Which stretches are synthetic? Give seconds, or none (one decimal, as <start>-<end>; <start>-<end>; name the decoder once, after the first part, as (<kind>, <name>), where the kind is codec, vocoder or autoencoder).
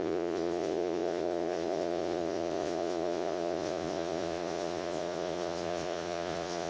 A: 0.0-6.7 (vocoder, Vocos)